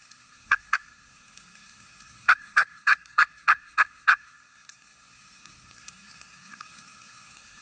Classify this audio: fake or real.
fake